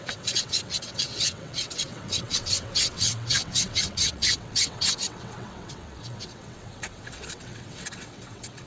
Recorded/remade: remade